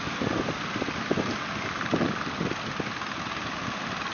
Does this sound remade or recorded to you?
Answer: recorded